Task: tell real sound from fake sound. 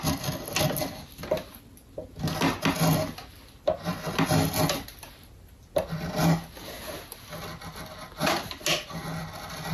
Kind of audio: real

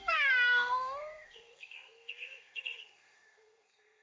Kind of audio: fake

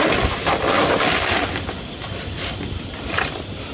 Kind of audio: real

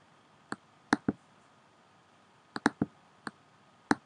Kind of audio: real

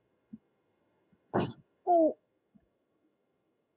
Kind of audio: fake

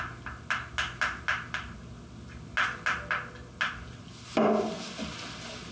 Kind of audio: real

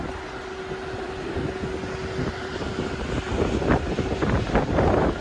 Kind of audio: real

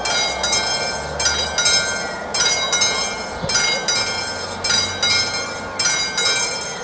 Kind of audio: real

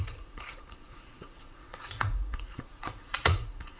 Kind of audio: fake